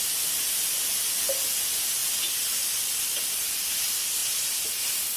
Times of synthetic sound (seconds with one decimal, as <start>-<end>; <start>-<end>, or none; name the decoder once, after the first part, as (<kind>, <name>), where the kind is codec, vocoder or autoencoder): 2.0-2.8 (vocoder, BigVGAN v2)